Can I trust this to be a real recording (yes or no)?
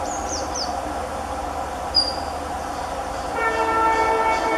no